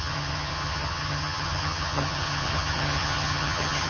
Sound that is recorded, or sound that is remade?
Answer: remade